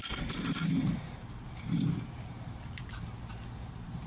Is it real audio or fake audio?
fake